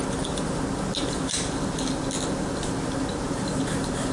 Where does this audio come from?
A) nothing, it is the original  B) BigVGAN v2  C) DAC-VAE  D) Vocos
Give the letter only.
A